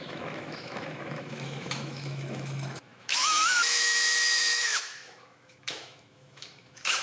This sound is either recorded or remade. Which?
remade